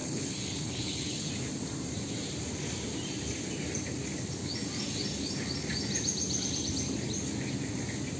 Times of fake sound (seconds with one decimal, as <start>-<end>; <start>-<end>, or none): 0.0-1.3